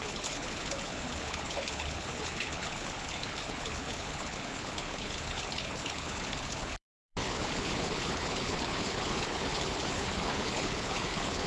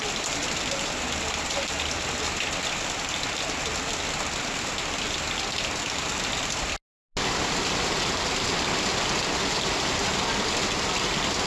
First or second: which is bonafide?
second